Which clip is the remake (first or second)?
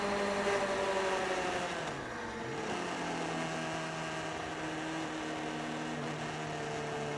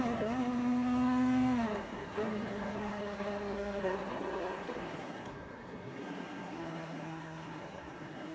second